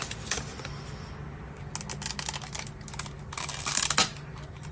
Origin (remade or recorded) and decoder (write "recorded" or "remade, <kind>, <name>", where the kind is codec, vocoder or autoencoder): recorded